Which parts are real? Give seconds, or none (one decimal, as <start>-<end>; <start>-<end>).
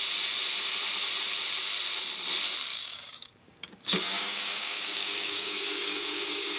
0.0-2.7